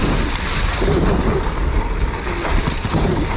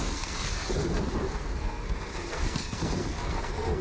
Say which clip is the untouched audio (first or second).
first